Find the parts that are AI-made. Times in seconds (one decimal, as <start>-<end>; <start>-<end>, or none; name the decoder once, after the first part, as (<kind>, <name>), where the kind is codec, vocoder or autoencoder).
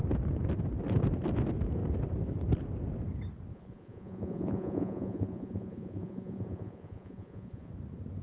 3.5-7.7 (vocoder, Vocos)